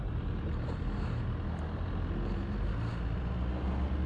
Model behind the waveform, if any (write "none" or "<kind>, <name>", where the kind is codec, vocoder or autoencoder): none